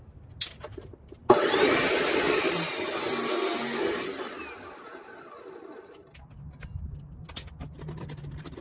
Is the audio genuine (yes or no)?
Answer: yes